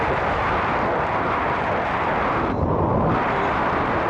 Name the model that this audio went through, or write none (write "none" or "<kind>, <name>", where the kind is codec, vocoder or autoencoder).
none